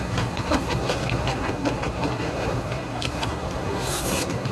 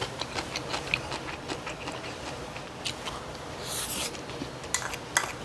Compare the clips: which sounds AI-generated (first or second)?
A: first